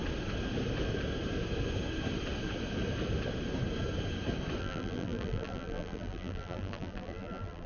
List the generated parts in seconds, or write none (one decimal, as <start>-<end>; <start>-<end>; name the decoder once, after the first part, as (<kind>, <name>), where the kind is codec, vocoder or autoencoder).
4.6-7.7 (vocoder, BigVGAN v2)